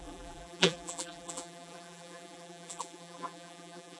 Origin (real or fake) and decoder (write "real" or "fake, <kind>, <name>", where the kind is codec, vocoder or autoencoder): fake, vocoder, BigVGAN v2